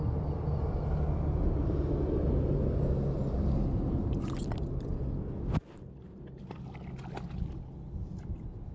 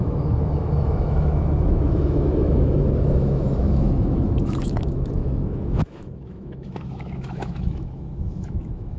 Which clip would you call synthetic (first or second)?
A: second